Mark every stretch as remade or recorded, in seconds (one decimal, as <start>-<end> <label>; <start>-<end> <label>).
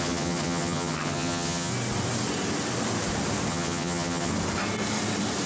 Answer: 0.0-1.7 remade; 1.7-3.5 recorded; 3.5-4.3 remade; 4.3-5.5 recorded